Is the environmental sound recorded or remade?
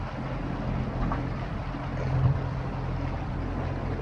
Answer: recorded